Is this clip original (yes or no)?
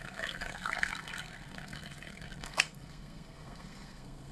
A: no